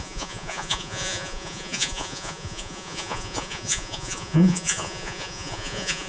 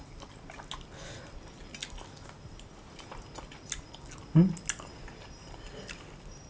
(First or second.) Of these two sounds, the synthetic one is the first